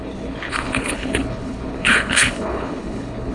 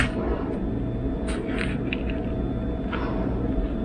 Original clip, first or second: second